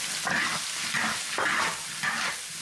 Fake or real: real